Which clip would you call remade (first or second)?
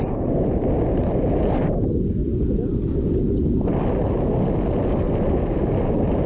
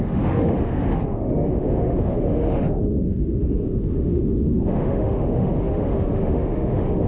second